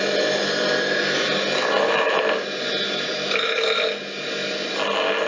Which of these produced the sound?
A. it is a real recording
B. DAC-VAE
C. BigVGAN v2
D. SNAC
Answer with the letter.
A